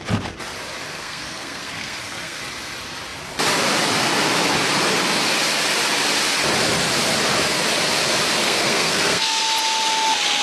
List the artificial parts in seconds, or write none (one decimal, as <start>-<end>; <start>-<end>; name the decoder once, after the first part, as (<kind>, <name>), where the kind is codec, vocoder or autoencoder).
0.9-2.4 (codec, SNAC); 8.4-9.4